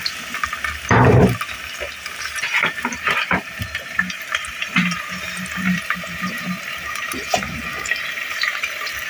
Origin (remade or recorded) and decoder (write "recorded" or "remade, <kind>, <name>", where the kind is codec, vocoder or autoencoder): remade, vocoder, BigVGAN v2